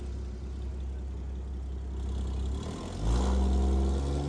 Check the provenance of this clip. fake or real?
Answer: real